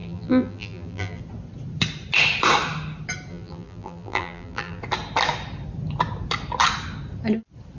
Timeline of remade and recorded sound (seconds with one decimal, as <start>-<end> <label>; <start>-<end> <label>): 0.0-1.2 remade; 1.2-3.3 recorded; 3.3-4.8 remade; 4.8-7.8 recorded